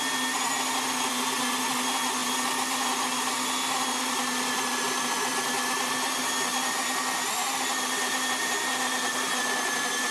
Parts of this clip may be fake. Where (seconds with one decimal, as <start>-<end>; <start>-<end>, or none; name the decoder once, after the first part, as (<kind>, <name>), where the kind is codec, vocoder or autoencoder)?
none